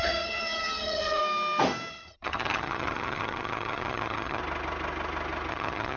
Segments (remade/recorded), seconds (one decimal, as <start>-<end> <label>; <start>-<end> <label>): 0.0-1.2 remade; 1.2-1.9 recorded; 1.9-4.4 remade; 4.4-5.5 recorded; 5.5-6.0 remade